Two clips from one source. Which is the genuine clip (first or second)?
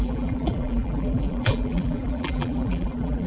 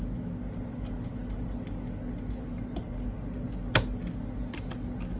second